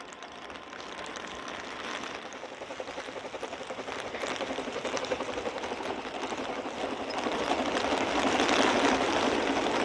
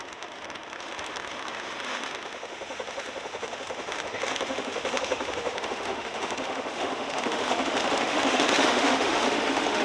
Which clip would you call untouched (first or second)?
first